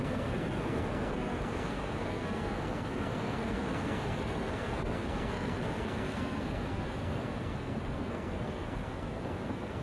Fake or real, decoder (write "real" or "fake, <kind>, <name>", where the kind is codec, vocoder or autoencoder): fake, codec, SNAC